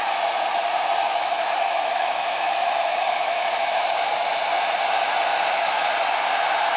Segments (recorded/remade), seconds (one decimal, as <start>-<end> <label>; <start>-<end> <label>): 0.0-1.1 recorded; 1.1-4.1 remade; 4.1-5.3 recorded; 5.3-5.9 remade; 5.9-6.8 recorded

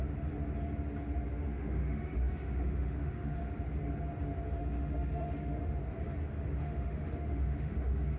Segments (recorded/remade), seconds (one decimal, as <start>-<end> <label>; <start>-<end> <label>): 0.0-1.3 recorded; 1.3-3.4 remade; 3.4-4.6 recorded; 4.6-5.8 remade; 5.8-6.6 recorded; 6.6-8.2 remade

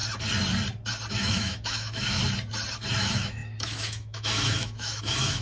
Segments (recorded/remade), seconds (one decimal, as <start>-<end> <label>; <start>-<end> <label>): 0.0-1.1 recorded; 1.1-2.2 remade; 2.2-3.0 recorded; 3.0-5.4 remade

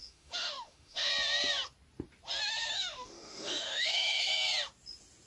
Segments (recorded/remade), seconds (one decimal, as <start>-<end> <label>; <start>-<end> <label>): 0.0-1.1 remade; 1.1-2.7 recorded; 2.7-4.3 remade; 4.3-5.3 recorded

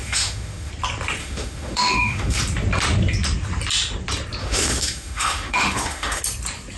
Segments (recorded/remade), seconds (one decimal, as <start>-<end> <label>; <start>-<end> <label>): 0.0-0.7 remade; 0.7-1.2 recorded; 1.2-2.4 remade; 2.4-4.4 recorded; 4.4-6.2 remade; 6.2-6.8 recorded